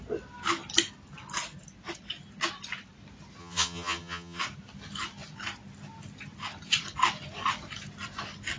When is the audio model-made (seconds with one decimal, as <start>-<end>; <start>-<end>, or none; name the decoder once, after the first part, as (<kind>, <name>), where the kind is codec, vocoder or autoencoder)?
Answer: 3.4-4.4 (vocoder, HiFi-GAN)